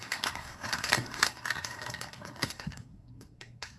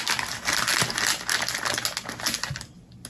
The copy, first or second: first